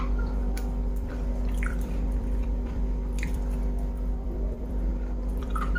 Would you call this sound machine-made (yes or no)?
yes